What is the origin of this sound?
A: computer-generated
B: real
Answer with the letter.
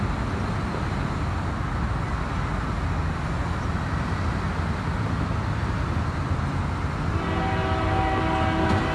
B